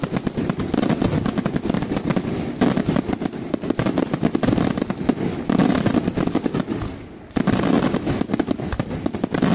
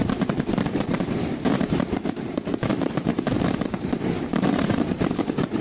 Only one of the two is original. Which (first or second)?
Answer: first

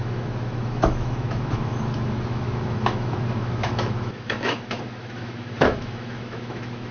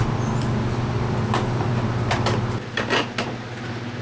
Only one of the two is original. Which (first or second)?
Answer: second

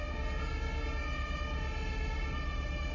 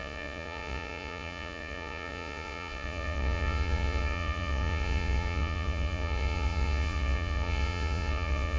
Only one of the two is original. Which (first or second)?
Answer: first